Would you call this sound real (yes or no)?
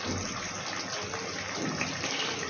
yes